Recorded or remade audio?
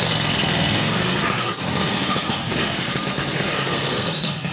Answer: remade